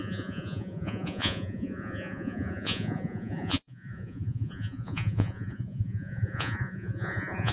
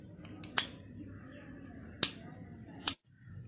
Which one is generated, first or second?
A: first